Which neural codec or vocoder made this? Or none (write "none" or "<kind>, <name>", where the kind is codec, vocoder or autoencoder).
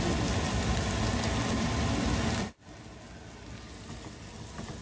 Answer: none